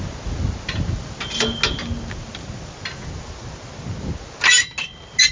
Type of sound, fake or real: real